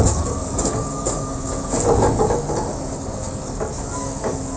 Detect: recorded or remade remade